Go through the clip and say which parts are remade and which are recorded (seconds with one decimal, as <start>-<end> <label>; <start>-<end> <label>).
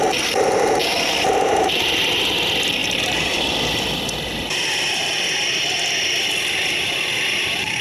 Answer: 0.0-0.8 recorded; 0.8-2.0 remade; 2.0-2.8 recorded; 2.8-3.5 remade; 3.5-7.8 recorded